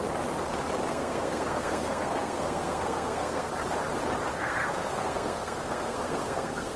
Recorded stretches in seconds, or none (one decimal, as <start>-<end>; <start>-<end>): 0.0-0.9; 3.5-4.3

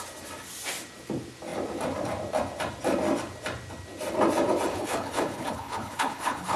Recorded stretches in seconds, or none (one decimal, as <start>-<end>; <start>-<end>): 0.0-4.7

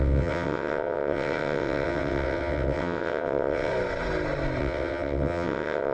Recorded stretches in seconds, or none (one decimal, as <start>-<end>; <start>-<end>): 3.7-4.6

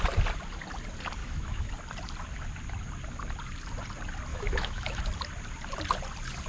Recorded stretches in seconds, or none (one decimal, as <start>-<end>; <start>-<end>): 0.0-1.2; 1.7-4.3; 5.0-6.5

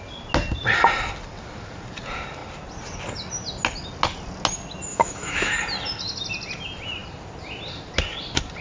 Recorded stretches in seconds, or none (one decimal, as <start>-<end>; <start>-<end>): 0.0-4.9; 5.5-8.6

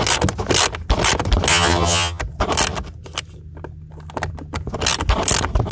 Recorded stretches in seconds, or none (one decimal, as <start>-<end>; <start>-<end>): 0.0-1.5; 2.2-5.7

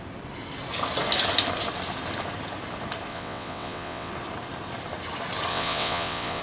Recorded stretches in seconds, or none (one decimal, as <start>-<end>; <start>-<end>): 0.0-3.1; 4.1-5.5

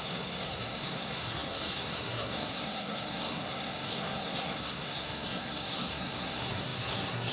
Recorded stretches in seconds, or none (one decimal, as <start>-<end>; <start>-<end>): none